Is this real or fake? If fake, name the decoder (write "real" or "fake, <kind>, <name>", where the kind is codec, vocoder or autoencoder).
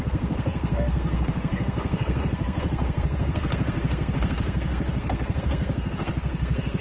fake, codec, SNAC